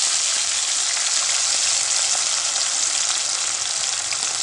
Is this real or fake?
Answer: real